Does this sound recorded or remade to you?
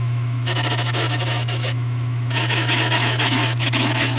remade